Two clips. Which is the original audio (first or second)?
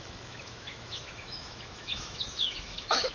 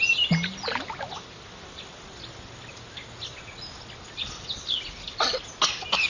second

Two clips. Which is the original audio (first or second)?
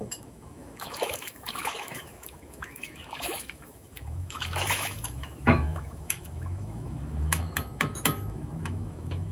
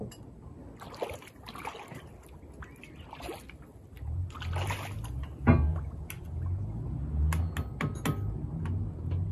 second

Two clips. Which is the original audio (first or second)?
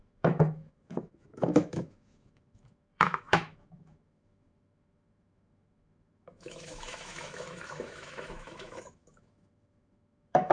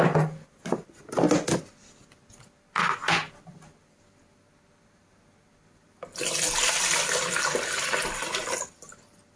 second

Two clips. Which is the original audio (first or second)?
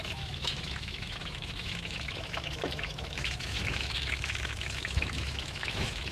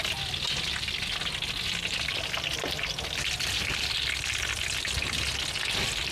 second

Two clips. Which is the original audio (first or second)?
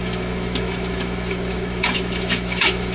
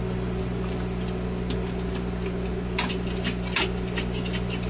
second